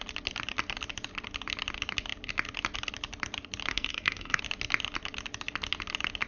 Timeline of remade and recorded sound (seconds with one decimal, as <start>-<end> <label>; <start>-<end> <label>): 0.0-3.7 recorded; 3.7-4.4 remade; 4.4-6.3 recorded